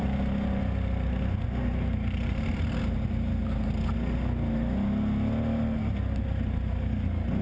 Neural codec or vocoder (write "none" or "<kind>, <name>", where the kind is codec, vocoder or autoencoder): none